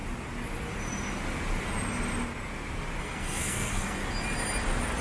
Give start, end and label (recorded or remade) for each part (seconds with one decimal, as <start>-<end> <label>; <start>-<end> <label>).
0.0-3.0 recorded; 3.0-4.0 remade; 4.0-5.0 recorded